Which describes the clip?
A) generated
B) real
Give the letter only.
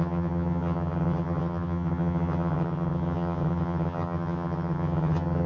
A